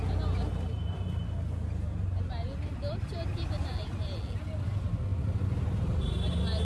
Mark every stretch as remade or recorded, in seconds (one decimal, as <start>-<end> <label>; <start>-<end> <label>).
0.0-6.6 recorded